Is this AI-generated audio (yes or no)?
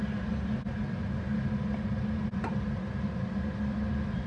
no